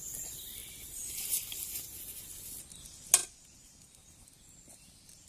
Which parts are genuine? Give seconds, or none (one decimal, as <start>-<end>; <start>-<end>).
0.0-0.6; 1.7-3.2